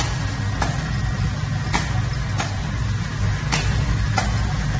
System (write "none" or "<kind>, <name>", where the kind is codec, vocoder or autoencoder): none